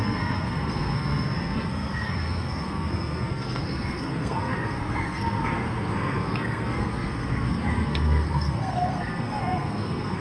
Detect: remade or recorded remade